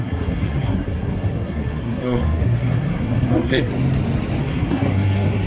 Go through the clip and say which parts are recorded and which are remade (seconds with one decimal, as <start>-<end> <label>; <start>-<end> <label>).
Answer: 0.0-3.7 remade; 3.7-4.4 recorded; 4.4-5.5 remade